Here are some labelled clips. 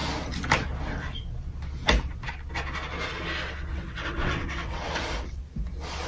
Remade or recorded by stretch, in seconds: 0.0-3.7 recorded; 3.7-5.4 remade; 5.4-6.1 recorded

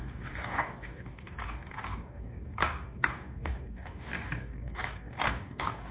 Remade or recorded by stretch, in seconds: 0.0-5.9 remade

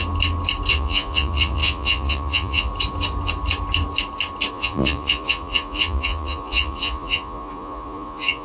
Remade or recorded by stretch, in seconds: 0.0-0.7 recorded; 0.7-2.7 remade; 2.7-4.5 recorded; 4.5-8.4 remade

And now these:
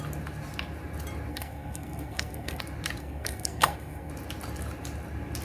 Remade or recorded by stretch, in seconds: 0.0-1.3 recorded; 1.3-2.6 remade; 2.6-3.0 recorded; 3.0-4.1 remade; 4.1-5.4 recorded